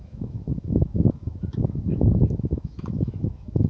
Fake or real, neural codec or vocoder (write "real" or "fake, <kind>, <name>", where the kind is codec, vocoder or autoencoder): fake, autoencoder, DAC-VAE